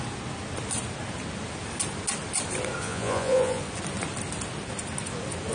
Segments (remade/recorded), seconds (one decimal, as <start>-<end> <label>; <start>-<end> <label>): 0.0-2.8 recorded; 2.8-3.6 remade; 3.6-5.5 recorded